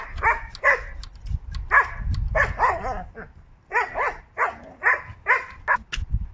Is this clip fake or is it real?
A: real